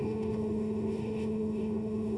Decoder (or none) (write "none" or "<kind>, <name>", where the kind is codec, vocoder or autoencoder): autoencoder, DAC-VAE